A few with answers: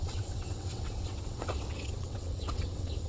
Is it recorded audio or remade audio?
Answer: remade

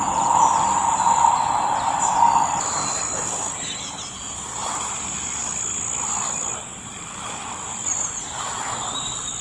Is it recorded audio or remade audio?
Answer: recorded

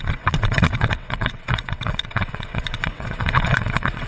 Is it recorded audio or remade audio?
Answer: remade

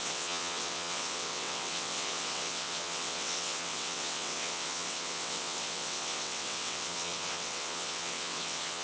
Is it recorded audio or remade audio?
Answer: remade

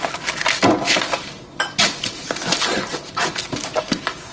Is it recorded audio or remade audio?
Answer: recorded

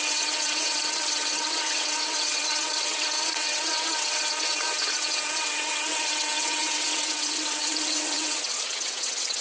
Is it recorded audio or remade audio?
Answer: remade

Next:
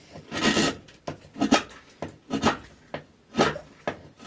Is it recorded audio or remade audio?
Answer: recorded